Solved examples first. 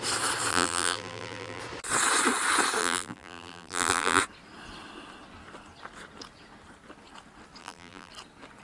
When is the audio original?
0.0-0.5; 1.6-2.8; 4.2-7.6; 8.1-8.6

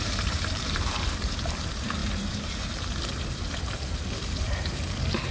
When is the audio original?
none

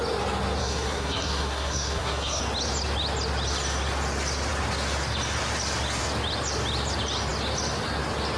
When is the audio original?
0.0-0.6; 2.4-8.4